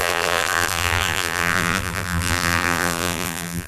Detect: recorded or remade remade